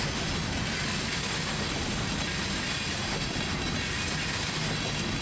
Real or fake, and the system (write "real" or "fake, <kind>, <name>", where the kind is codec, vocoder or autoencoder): real